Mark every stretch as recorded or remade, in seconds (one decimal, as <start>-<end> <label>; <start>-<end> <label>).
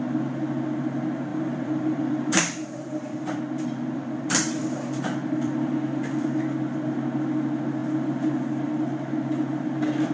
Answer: 0.0-1.3 recorded; 1.3-6.4 remade; 6.4-10.1 recorded